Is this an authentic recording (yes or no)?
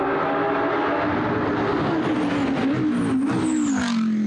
yes